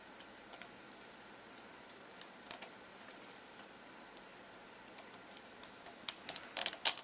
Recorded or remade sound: recorded